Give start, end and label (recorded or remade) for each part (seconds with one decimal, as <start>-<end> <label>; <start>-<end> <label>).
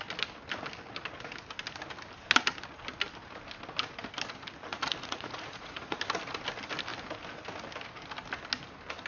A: 0.0-4.7 recorded; 4.7-6.0 remade; 6.0-9.1 recorded